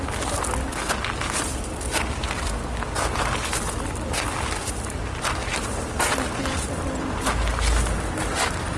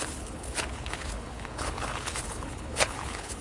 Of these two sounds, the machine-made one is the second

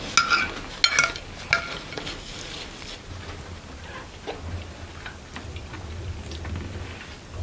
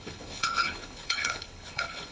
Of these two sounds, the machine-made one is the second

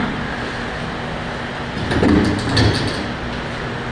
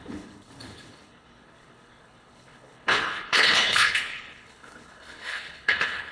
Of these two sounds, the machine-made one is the second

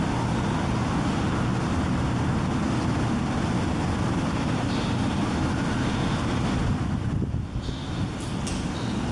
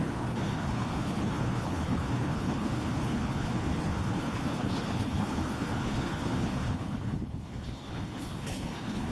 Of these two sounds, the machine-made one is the second